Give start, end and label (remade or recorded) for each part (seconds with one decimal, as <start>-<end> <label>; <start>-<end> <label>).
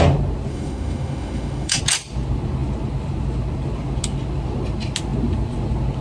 0.0-0.5 recorded; 0.5-1.8 remade; 1.8-6.0 recorded